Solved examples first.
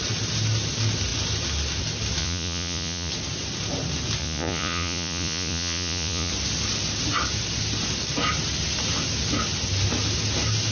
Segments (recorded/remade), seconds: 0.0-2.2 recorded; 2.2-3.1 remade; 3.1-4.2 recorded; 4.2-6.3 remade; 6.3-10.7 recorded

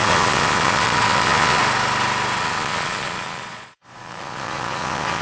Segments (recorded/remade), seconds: 0.0-1.6 remade; 1.6-2.4 recorded; 2.4-5.2 remade

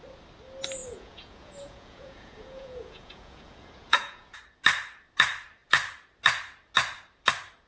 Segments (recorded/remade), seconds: 0.0-0.8 recorded; 0.8-4.4 remade; 4.4-7.7 recorded

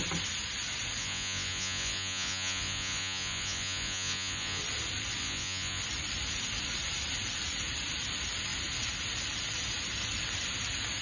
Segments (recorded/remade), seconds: 0.0-1.0 recorded; 1.0-4.6 remade; 4.6-5.2 recorded; 5.2-5.8 remade; 5.8-11.0 recorded